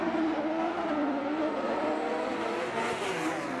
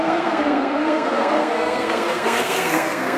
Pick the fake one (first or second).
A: second